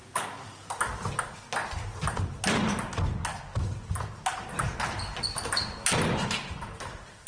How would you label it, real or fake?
real